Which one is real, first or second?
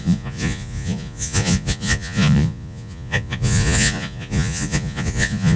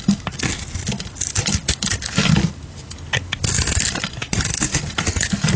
second